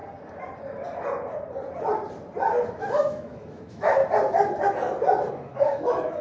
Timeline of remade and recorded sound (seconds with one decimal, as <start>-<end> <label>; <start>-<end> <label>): 0.0-2.7 recorded; 2.7-4.0 remade; 4.0-5.3 recorded; 5.3-6.2 remade